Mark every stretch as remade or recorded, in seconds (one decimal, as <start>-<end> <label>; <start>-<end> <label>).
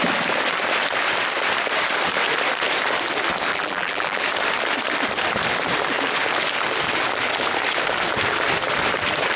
0.0-3.5 recorded; 3.5-4.2 remade; 4.2-9.4 recorded